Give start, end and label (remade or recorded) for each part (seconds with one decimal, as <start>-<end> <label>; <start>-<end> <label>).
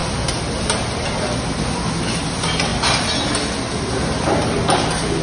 0.0-5.2 recorded